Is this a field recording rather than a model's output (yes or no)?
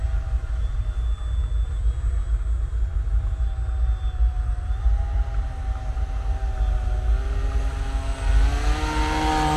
yes